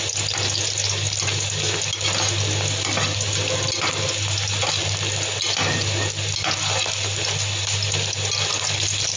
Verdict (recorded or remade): recorded